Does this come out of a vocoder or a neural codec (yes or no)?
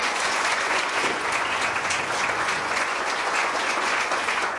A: yes